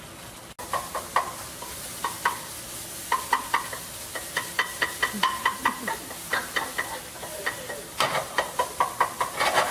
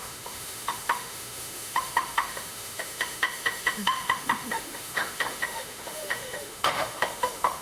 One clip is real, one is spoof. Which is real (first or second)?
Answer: first